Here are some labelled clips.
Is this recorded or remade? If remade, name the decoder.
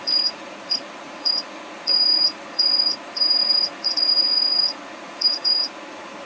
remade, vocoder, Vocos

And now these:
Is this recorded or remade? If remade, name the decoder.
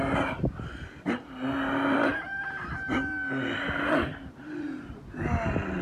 recorded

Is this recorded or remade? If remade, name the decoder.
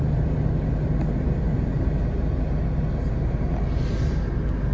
recorded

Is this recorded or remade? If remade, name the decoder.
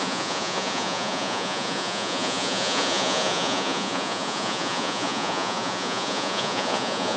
remade, vocoder, Vocos